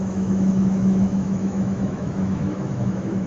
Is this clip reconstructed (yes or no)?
yes